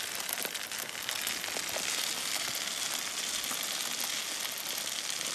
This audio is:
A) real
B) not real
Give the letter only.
A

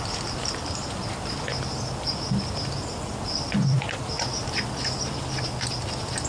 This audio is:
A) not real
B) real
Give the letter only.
B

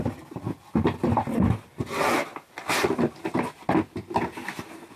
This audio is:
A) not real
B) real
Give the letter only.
B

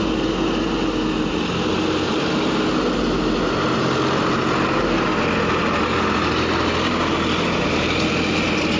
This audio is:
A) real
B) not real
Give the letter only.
A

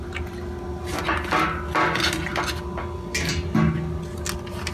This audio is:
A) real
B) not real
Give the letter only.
A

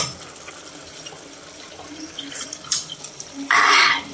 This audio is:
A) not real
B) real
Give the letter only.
B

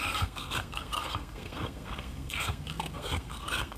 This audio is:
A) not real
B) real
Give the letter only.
A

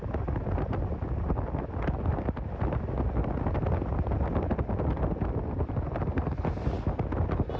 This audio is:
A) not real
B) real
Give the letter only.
B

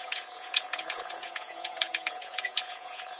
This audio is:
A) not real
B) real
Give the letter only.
A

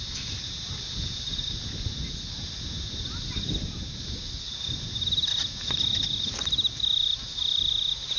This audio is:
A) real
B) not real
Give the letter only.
A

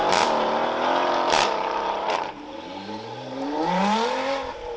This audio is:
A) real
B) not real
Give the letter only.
B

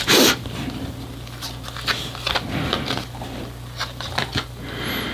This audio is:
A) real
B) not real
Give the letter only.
A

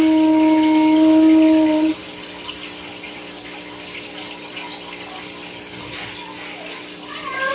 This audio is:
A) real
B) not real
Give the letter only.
A